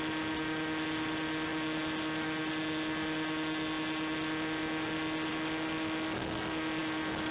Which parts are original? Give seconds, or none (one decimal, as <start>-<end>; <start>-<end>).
0.0-7.3